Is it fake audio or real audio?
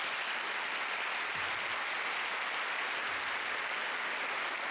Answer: real